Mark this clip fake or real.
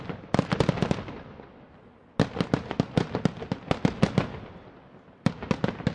real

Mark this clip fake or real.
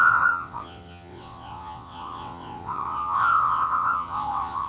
fake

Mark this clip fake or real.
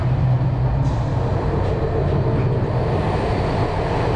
real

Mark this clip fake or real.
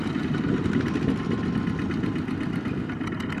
real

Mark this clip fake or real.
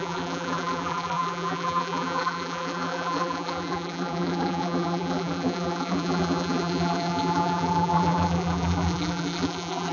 fake